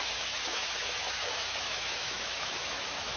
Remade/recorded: remade